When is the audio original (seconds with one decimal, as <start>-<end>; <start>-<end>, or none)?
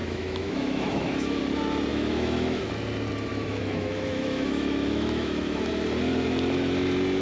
1.4-1.9; 2.7-3.3; 5.7-7.2